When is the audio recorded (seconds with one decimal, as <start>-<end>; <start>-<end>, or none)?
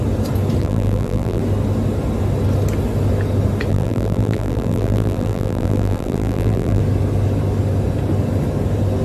0.0-0.6; 1.4-3.7; 6.8-9.0